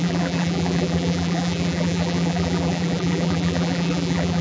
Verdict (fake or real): fake